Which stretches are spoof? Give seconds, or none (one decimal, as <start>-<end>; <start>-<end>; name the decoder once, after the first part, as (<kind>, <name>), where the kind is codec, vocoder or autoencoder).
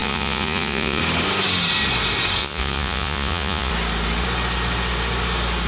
0.0-1.0 (vocoder, Vocos); 2.4-3.7